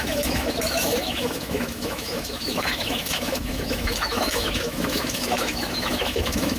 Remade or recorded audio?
remade